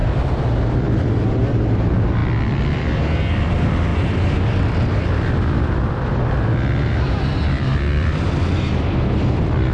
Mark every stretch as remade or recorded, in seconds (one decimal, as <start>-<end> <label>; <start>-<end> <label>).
0.0-2.2 remade; 2.2-2.8 recorded; 2.8-9.7 remade